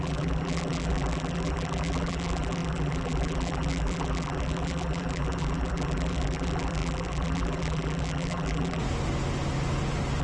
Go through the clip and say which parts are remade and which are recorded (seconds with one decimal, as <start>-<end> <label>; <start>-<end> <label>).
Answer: 0.0-8.8 remade; 8.8-10.2 recorded